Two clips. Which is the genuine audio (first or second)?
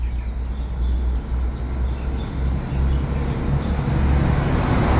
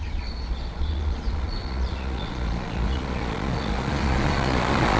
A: first